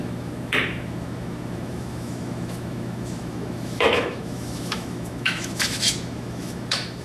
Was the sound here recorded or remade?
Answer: remade